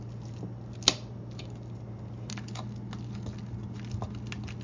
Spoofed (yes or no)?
no